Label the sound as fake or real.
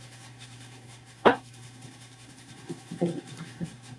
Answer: fake